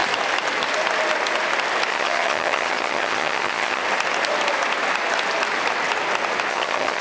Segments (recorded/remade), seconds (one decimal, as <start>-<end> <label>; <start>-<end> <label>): 0.0-1.9 recorded; 1.9-3.8 remade; 3.8-6.5 recorded; 6.5-7.0 remade